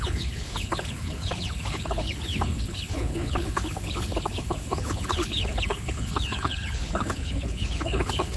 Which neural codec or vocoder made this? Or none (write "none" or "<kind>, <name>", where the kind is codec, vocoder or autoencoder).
codec, HILCodec